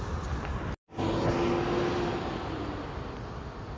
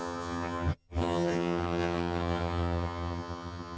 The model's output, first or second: second